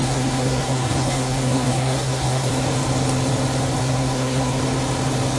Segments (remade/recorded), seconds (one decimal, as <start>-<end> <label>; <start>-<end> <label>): 0.0-2.5 remade; 2.5-3.8 recorded; 3.8-4.6 remade; 4.6-5.4 recorded